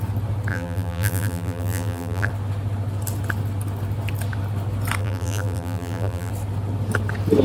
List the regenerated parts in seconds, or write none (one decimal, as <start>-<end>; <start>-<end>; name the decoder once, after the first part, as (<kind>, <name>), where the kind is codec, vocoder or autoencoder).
0.5-2.3 (vocoder, BigVGAN v2); 5.0-6.3